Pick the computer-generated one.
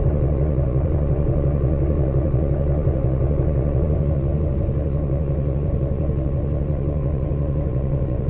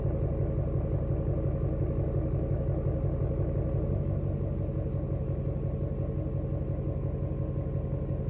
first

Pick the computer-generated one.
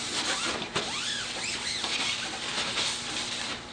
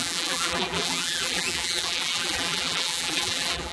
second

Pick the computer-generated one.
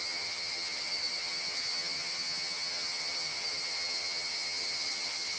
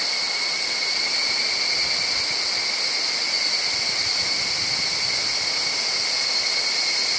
first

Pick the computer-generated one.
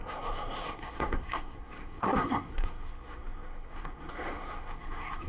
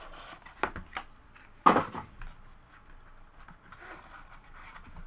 first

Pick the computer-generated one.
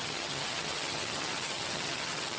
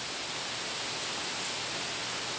first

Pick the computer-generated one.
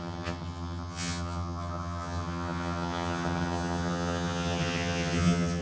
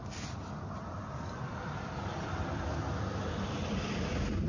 first